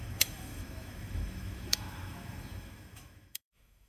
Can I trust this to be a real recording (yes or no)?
no